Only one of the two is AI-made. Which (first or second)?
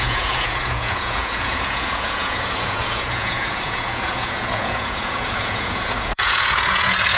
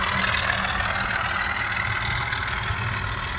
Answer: first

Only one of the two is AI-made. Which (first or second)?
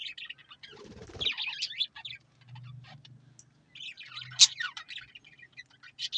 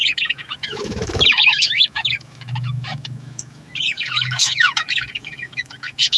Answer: second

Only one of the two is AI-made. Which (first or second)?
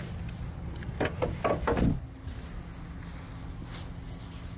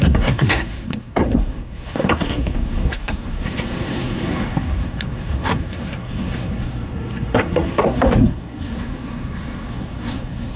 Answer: second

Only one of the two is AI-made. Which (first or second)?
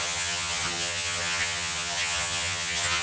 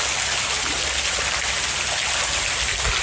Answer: first